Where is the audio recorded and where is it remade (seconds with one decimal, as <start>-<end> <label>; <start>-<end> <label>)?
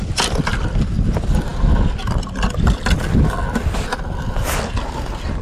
0.0-5.4 recorded